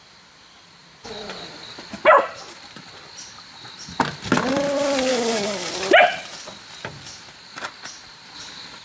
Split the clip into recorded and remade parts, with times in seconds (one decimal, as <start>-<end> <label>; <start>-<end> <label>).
0.0-5.1 recorded; 5.1-5.7 remade; 5.7-8.8 recorded